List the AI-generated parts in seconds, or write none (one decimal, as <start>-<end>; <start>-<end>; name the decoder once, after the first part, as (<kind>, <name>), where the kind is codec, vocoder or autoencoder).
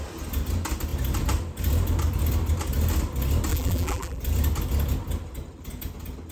3.5-4.2 (vocoder, BigVGAN v2)